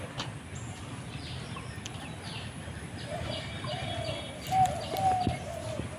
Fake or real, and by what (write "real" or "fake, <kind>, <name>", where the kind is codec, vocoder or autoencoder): real